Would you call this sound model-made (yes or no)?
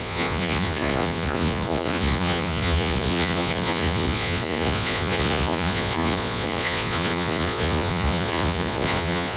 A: yes